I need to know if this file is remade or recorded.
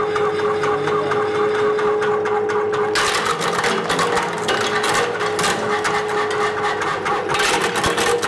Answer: recorded